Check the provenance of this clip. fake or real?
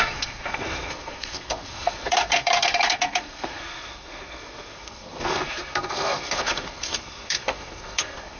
fake